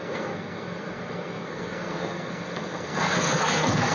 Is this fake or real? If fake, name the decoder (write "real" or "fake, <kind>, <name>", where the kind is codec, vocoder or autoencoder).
fake, codec, SNAC